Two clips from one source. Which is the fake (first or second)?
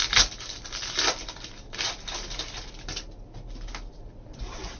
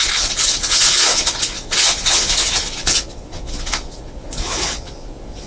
second